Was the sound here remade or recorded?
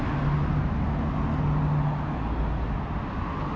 recorded